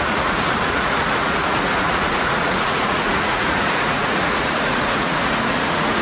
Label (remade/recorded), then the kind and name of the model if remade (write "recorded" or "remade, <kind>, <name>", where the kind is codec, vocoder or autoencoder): remade, vocoder, Vocos